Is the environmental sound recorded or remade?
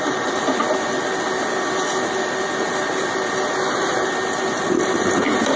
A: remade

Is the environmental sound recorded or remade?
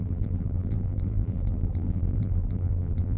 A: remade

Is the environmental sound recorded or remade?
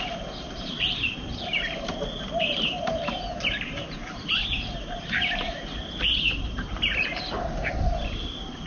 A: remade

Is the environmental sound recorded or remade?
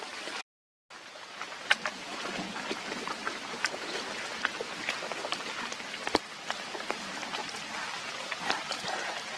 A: recorded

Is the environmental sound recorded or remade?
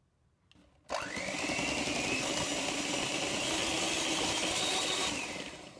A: recorded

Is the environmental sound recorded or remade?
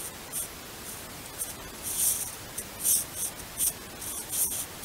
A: recorded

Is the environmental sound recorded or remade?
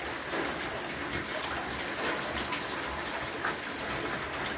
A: recorded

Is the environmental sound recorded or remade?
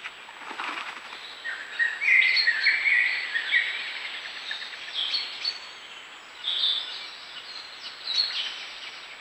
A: recorded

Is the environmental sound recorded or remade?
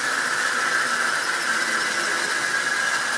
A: recorded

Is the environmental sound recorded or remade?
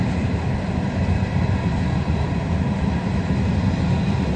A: remade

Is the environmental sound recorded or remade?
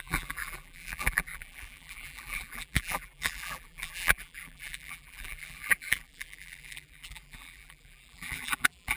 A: remade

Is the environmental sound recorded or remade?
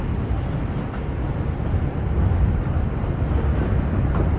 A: remade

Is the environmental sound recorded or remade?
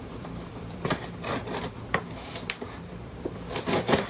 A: remade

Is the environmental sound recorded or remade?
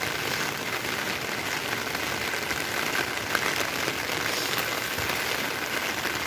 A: recorded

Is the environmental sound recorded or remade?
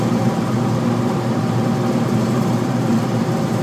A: remade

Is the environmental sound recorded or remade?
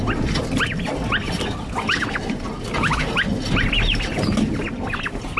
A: recorded